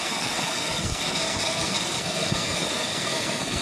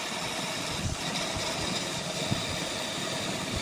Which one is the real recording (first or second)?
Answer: second